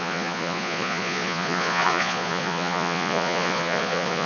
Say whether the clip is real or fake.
fake